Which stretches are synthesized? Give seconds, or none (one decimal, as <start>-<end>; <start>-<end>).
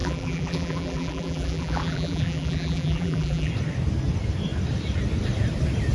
0.0-3.5